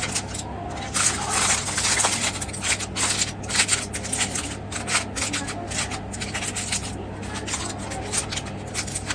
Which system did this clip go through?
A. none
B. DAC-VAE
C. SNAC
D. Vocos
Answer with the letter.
A